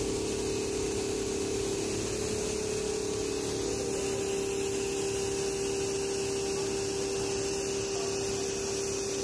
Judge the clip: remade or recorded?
recorded